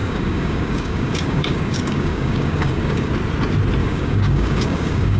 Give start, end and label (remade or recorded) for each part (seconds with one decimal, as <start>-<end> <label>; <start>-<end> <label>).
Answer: 0.0-3.1 remade; 3.1-3.8 recorded; 3.8-5.2 remade